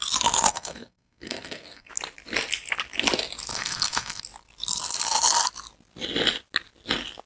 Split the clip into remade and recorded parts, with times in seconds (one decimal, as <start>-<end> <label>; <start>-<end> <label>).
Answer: 0.0-0.5 recorded; 0.5-1.9 remade; 1.9-3.5 recorded; 3.5-4.2 remade; 4.2-7.3 recorded